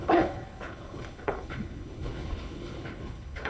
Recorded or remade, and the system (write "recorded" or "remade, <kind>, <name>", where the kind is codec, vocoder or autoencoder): remade, codec, HILCodec